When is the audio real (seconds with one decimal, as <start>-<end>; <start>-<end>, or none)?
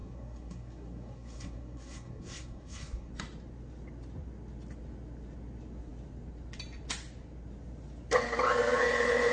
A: 3.1-9.3